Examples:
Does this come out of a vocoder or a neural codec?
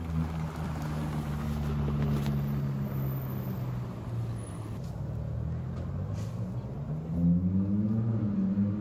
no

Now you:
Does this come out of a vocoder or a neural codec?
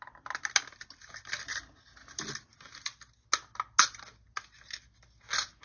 no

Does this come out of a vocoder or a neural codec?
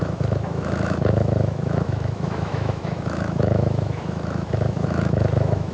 yes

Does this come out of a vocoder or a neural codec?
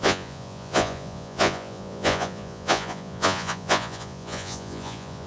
yes